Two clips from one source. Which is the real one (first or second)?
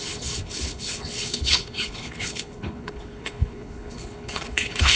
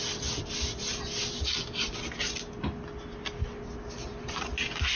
second